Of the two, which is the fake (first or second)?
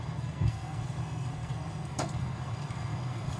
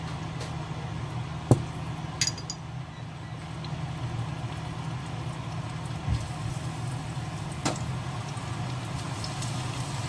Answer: first